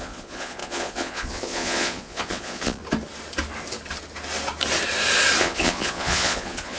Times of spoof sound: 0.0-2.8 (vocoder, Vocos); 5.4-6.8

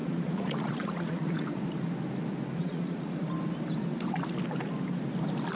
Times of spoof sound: 0.0-1.6 (vocoder, Vocos); 2.6-3.2

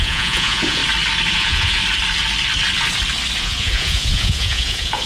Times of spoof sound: 0.0-0.8 (vocoder, Vocos); 1.3-1.8; 3.4-5.1